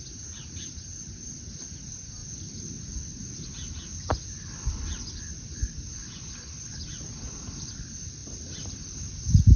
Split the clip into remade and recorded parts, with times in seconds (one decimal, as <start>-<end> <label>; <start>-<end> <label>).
0.0-2.2 recorded; 2.2-3.0 remade; 3.0-6.0 recorded; 6.0-7.5 remade; 7.5-8.2 recorded; 8.2-9.1 remade; 9.1-9.6 recorded